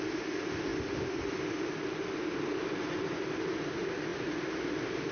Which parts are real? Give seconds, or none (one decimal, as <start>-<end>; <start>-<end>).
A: 0.0-5.1